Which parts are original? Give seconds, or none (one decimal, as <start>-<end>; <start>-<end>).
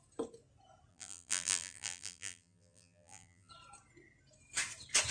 0.0-0.9; 3.5-5.1